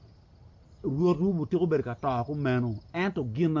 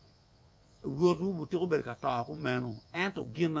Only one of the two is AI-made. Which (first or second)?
second